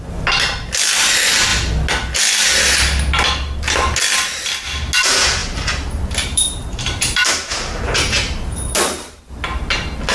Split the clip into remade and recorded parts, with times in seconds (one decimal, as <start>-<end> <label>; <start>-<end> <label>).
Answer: 0.0-5.4 recorded; 5.4-9.2 remade; 9.2-10.1 recorded